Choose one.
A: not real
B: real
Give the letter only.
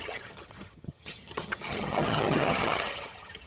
A